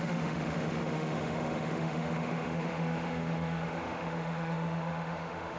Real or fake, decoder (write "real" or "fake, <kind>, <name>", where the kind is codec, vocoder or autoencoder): fake, autoencoder, DAC-VAE